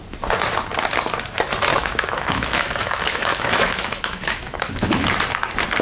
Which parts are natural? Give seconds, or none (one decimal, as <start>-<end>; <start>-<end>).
0.0-1.7; 5.2-5.8